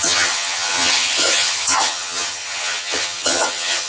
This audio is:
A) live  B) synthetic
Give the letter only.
B